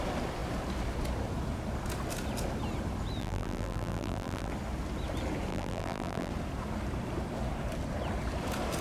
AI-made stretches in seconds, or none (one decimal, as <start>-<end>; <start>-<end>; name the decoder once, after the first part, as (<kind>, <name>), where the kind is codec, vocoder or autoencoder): 3.2-4.5 (vocoder, BigVGAN v2); 5.5-6.3